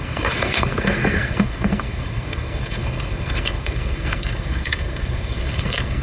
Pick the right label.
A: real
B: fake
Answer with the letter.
B